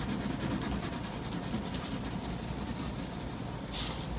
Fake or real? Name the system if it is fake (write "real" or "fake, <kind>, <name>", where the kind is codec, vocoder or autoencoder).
real